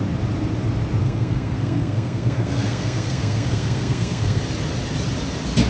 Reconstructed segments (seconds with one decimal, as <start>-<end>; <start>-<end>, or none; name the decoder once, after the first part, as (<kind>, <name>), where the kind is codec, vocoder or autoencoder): 1.0-4.4 (codec, SNAC)